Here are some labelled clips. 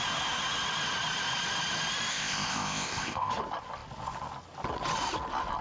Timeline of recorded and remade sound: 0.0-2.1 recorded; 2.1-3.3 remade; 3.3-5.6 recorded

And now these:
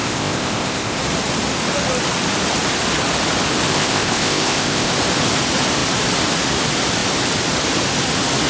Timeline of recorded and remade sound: 0.0-1.0 remade; 1.0-3.7 recorded; 3.7-4.9 remade; 4.9-8.5 recorded

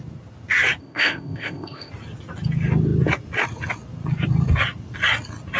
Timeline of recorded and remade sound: 0.0-0.8 recorded; 0.8-1.9 remade; 1.9-5.6 recorded

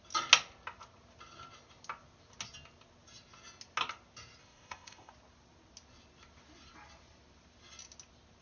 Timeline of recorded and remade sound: 0.0-4.4 recorded; 4.4-5.1 remade; 5.1-8.4 recorded

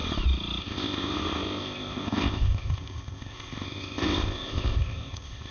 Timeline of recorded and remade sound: 0.0-0.6 recorded; 0.6-5.5 remade

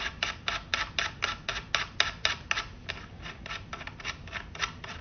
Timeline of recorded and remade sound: 0.0-5.0 recorded

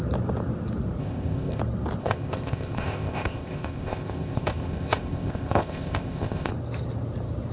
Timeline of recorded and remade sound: 0.0-1.0 recorded; 1.0-1.6 remade; 1.6-2.0 recorded; 2.0-6.5 remade; 6.5-7.5 recorded

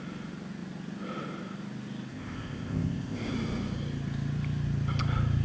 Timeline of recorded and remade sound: 0.0-2.1 recorded; 2.1-3.3 remade; 3.3-5.4 recorded